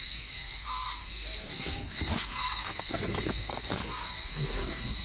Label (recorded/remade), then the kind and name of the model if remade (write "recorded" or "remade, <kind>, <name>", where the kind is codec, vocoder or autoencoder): remade, codec, SNAC